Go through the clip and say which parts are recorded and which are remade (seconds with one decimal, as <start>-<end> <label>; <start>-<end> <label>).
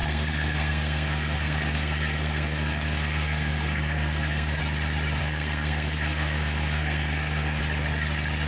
0.0-4.6 remade; 4.6-5.2 recorded; 5.2-7.6 remade; 7.6-8.5 recorded